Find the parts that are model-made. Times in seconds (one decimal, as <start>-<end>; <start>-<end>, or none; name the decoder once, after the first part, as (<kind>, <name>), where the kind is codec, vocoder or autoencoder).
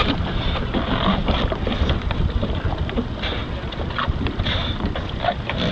none